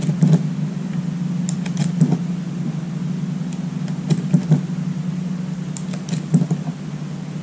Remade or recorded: recorded